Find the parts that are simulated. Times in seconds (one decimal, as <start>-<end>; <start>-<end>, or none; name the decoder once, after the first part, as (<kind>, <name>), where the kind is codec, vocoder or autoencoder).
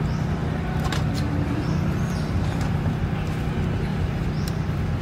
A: 0.4-3.0 (vocoder, BigVGAN v2); 3.9-5.0